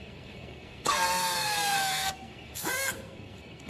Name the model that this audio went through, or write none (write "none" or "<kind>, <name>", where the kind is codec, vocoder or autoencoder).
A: codec, SNAC